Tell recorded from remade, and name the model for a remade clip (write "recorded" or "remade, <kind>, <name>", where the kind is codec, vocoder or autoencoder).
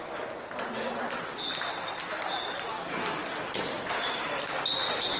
recorded